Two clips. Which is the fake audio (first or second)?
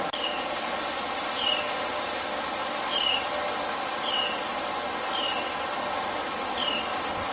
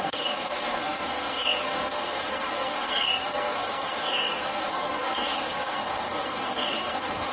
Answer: second